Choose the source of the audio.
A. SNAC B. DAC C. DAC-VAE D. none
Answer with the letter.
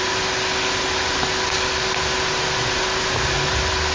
D